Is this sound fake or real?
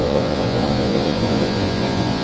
fake